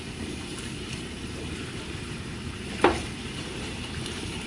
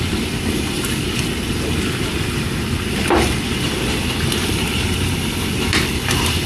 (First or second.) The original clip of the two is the second